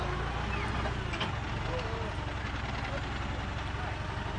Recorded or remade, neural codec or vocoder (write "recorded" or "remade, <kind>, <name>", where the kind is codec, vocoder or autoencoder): recorded